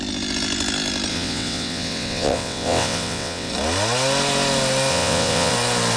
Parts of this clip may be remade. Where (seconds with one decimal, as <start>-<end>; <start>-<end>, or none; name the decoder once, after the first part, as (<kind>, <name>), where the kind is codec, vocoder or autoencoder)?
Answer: 1.1-3.5 (vocoder, WaveNeXt); 4.9-5.5